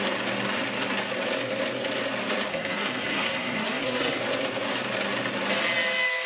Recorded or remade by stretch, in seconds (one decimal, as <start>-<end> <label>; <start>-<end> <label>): 0.0-2.5 recorded; 2.5-4.2 remade; 4.2-6.3 recorded